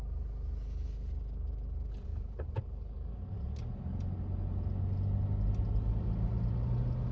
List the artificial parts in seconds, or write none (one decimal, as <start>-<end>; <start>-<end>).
2.1-2.6